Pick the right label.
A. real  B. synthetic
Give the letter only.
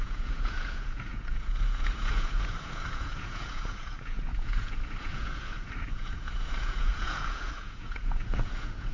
B